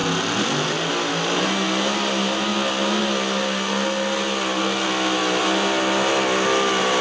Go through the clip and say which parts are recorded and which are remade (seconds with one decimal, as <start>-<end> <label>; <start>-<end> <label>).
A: 0.0-7.0 recorded